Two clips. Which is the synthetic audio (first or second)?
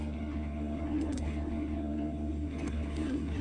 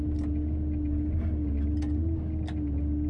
first